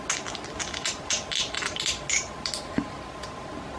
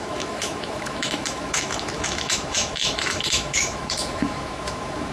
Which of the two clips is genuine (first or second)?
first